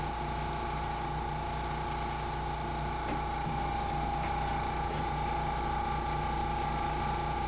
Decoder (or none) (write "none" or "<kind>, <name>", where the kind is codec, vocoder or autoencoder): none